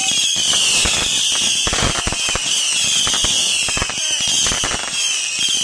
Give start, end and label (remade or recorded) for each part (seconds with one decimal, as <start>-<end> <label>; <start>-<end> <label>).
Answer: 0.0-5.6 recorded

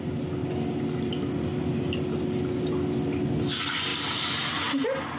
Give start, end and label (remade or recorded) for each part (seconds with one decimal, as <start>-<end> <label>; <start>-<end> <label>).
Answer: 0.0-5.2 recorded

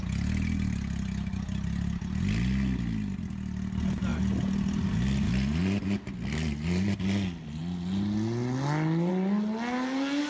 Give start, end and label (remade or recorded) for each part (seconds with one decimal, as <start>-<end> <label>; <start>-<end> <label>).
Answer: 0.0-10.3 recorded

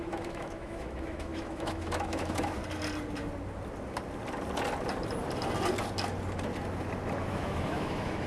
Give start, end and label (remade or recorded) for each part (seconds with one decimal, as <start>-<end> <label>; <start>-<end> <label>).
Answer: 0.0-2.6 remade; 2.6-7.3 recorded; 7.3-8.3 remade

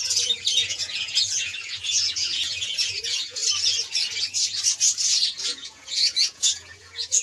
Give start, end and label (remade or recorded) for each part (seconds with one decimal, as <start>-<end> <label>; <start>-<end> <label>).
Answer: 0.0-3.4 remade; 3.4-5.4 recorded; 5.4-7.2 remade